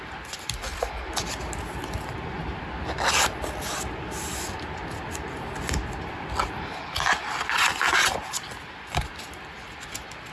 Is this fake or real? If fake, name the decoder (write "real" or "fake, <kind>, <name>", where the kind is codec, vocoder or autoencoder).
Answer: real